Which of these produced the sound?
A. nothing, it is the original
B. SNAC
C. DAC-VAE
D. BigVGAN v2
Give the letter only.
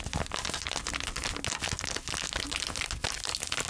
A